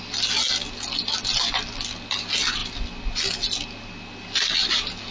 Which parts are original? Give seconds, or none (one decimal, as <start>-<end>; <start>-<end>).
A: 0.0-5.1